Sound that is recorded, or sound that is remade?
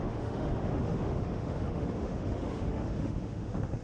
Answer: remade